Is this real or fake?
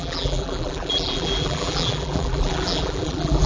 fake